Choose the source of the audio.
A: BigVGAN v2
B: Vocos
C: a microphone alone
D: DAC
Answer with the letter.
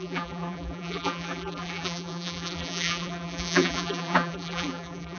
A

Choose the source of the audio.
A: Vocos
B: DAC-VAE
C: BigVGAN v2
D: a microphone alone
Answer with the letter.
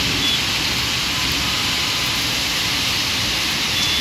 D